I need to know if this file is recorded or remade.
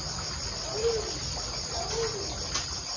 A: recorded